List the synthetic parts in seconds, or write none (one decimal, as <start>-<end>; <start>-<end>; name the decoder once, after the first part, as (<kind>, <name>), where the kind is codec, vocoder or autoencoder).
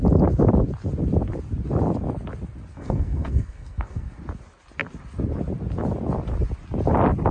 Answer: 2.7-4.2 (codec, SNAC)